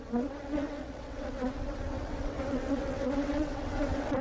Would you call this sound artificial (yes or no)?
yes